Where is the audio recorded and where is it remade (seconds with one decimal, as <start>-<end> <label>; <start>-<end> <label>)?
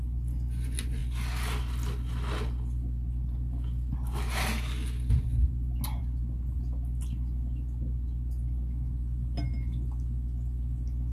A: 0.0-11.1 recorded